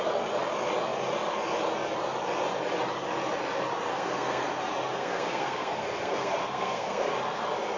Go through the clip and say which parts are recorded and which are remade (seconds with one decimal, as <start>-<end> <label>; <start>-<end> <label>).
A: 0.0-3.9 recorded; 3.9-4.5 remade; 4.5-4.9 recorded; 4.9-7.1 remade; 7.1-7.8 recorded

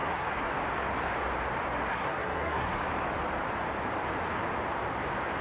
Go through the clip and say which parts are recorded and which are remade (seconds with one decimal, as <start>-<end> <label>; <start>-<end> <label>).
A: 0.0-0.5 remade; 0.5-1.9 recorded; 1.9-2.8 remade; 2.8-5.4 recorded

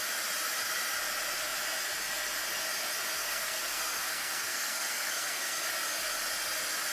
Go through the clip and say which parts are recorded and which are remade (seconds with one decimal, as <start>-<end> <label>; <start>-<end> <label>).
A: 0.0-3.2 recorded; 3.2-5.7 remade; 5.7-6.9 recorded